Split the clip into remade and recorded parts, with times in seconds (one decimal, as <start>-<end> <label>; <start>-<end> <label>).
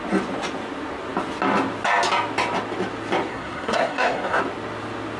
0.0-3.3 recorded; 3.3-4.4 remade; 4.4-5.2 recorded